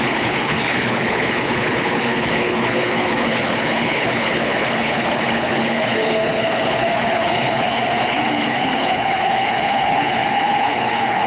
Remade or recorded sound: remade